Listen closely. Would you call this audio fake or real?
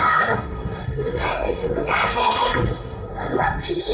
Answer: fake